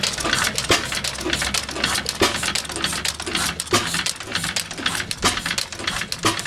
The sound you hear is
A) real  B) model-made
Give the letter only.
A